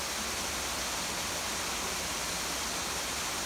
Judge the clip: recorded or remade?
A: recorded